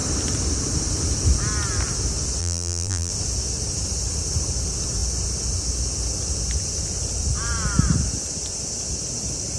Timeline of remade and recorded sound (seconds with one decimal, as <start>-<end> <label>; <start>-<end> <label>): 0.0-2.4 recorded; 2.4-3.1 remade; 3.1-9.6 recorded